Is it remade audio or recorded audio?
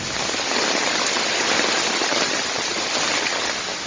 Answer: recorded